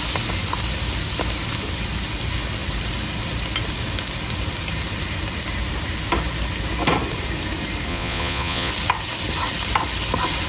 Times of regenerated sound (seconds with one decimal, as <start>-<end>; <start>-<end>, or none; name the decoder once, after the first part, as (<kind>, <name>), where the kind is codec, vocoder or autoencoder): 7.9-8.7 (vocoder, Vocos)